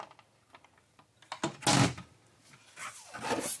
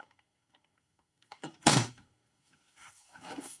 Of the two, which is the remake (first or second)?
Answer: second